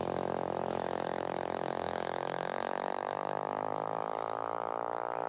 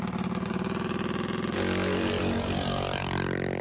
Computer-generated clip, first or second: first